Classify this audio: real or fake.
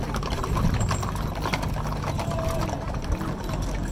real